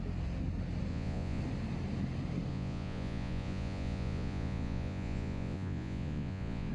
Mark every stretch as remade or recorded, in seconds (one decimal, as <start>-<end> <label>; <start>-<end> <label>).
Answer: 0.0-0.9 recorded; 0.9-1.4 remade; 1.4-2.5 recorded; 2.5-6.7 remade